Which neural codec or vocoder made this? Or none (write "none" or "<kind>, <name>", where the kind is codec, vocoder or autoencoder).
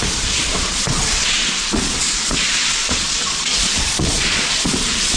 vocoder, Vocos